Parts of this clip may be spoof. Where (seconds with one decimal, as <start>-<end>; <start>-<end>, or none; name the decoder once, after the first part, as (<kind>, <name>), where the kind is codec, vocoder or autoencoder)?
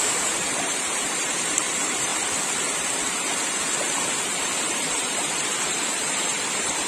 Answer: 0.0-2.1 (vocoder, BigVGAN v2); 4.7-6.9